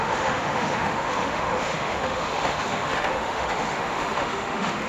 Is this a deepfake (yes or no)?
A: yes